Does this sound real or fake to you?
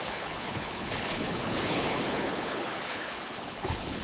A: fake